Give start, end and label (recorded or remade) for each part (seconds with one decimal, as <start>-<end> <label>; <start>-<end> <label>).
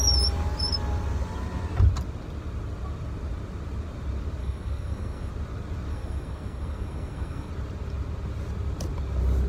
0.0-4.4 recorded; 4.4-5.3 remade; 5.3-5.9 recorded; 5.9-7.5 remade; 7.5-9.5 recorded